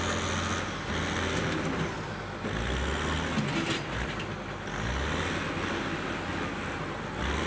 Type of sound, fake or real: real